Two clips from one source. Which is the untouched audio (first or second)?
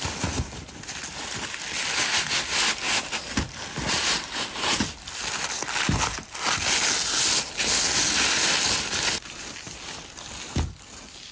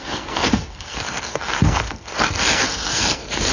first